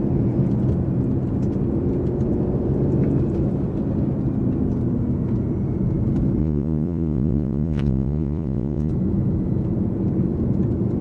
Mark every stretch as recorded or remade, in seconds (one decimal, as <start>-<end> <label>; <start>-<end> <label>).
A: 0.0-6.4 recorded; 6.4-8.9 remade; 8.9-11.0 recorded